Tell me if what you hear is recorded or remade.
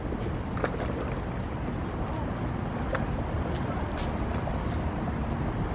recorded